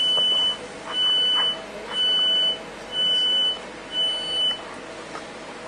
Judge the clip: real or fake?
real